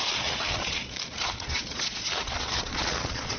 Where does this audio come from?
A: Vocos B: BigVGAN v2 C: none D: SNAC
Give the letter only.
A